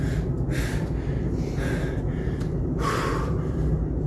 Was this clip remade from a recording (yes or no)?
no